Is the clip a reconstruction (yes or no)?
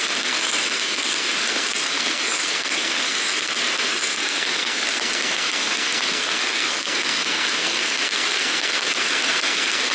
yes